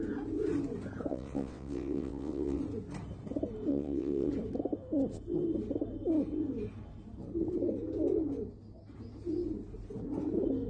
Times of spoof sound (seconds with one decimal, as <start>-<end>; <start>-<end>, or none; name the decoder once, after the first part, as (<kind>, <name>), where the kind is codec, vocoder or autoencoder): 1.1-2.6 (vocoder, WaveNeXt); 3.7-4.3